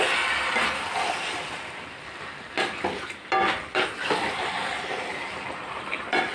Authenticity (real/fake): real